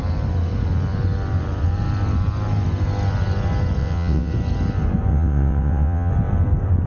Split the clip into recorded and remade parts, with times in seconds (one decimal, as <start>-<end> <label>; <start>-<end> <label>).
0.0-3.8 recorded; 3.8-4.3 remade; 4.3-5.1 recorded; 5.1-6.1 remade; 6.1-6.9 recorded